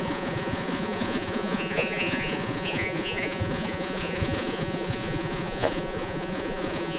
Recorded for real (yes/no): no